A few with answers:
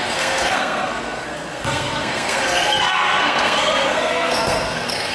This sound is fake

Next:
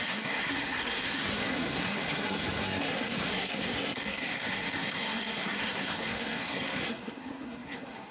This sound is fake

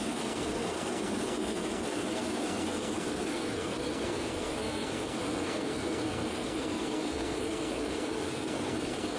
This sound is fake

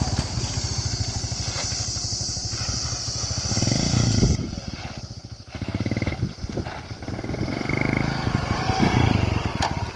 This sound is real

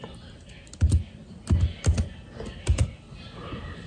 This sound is real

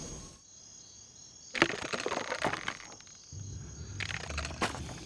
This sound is real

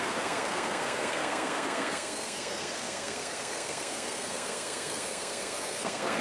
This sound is fake